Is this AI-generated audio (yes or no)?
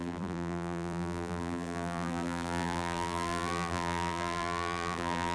yes